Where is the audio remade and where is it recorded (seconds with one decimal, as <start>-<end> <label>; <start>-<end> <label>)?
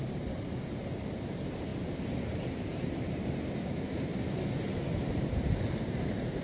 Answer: 0.0-4.1 remade; 4.1-4.7 recorded; 4.7-6.4 remade